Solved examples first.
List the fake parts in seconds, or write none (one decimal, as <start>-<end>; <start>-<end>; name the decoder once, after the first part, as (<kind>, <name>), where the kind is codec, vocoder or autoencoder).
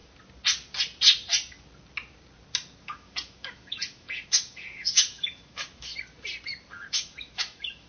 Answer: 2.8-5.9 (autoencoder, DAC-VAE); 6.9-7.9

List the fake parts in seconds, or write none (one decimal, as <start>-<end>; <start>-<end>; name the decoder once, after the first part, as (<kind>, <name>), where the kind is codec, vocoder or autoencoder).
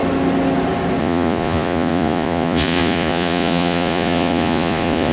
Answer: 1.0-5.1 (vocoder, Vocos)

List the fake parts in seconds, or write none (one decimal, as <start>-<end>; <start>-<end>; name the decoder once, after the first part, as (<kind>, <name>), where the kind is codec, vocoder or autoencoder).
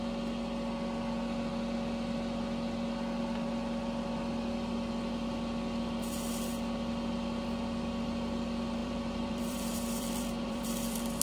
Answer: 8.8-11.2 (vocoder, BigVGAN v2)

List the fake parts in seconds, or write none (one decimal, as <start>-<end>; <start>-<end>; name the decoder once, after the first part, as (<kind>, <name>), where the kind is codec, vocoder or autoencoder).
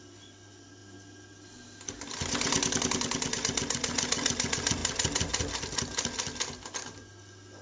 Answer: none